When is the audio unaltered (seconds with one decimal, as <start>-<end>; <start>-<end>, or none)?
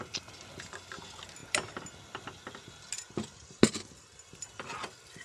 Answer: 0.0-5.2